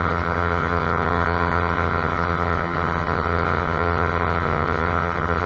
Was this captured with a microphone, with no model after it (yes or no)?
no